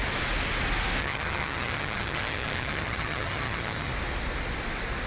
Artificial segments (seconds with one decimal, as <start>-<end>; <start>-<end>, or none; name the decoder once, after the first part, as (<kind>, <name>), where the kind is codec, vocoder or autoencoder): 1.0-3.9 (vocoder, HiFi-GAN)

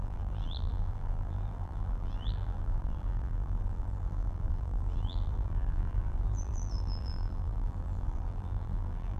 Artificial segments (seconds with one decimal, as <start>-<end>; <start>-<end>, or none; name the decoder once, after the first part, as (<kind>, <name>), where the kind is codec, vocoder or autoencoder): 0.0-9.2 (vocoder, BigVGAN v2)

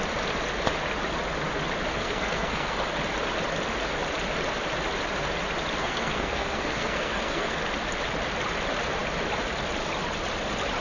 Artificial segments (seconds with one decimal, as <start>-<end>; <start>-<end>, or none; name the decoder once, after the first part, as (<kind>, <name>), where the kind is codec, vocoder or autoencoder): 1.9-2.8 (codec, SNAC); 5.8-7.6

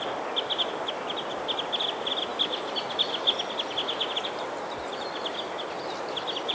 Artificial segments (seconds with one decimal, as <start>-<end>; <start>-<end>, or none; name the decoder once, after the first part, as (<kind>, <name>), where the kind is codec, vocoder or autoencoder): none

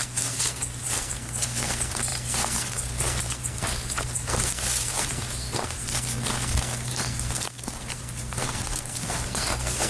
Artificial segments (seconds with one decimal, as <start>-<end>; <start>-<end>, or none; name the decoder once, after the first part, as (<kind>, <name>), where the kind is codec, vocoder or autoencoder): 0.0-9.9 (codec, SNAC)

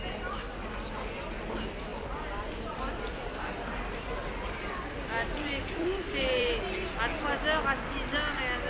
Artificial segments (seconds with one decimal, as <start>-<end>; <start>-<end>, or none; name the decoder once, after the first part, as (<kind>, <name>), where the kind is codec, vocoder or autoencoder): 1.9-6.6 (vocoder, BigVGAN v2)

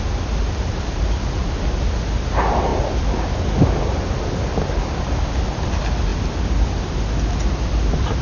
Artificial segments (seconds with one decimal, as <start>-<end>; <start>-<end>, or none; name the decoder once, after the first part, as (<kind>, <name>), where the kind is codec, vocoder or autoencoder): none

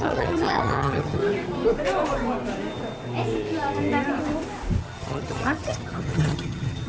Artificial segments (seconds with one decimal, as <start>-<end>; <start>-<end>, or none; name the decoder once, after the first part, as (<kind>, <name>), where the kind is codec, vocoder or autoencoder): 0.0-1.2 (vocoder, HiFi-GAN); 4.8-6.9